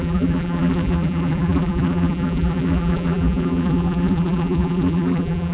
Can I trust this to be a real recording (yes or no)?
no